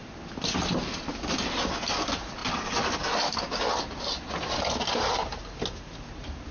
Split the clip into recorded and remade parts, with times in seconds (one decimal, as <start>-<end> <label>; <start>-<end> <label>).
0.0-6.5 recorded